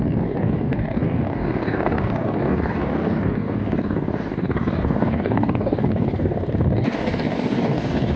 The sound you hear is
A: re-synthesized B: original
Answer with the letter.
A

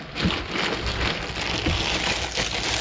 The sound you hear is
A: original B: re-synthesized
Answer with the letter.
A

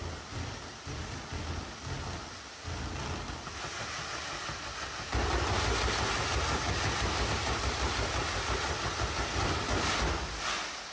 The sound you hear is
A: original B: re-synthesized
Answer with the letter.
A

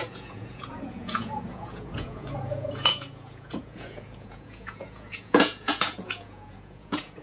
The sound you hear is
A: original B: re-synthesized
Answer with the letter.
B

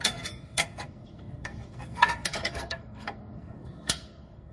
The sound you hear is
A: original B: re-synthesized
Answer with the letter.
B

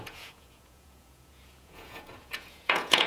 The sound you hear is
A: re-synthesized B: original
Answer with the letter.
A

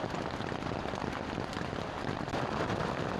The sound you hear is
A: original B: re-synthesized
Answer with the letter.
B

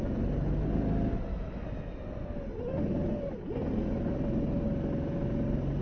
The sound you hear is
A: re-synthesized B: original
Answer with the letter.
B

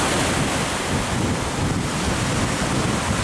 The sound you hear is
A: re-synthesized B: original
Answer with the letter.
B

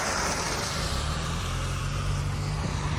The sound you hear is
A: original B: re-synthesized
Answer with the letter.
B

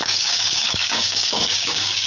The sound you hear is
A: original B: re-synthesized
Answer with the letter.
B